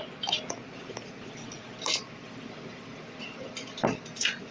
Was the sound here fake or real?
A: real